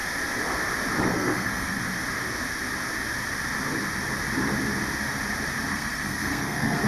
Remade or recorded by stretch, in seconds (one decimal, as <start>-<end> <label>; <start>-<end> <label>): 0.0-1.0 recorded; 1.0-1.8 remade; 1.8-5.7 recorded; 5.7-6.9 remade